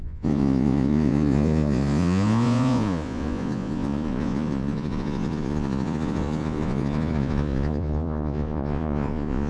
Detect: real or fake fake